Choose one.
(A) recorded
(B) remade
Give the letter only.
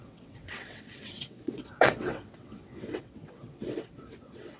B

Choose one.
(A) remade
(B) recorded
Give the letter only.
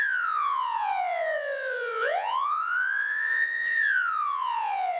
A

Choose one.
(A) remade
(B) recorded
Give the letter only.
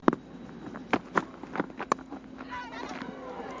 B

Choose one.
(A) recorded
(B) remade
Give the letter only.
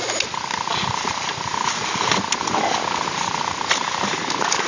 A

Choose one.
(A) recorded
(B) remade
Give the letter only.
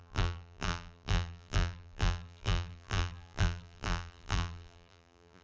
B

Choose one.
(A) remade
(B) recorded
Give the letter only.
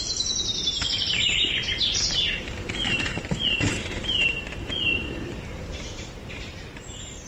A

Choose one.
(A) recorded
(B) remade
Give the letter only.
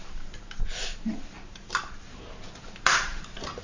B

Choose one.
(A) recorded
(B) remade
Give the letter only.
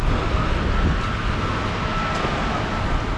A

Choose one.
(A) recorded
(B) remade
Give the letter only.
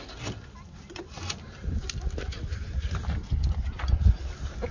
A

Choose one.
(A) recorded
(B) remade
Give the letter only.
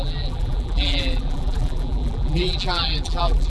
B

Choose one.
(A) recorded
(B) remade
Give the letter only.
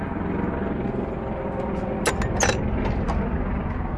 A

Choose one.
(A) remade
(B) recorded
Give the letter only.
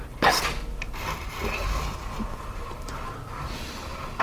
B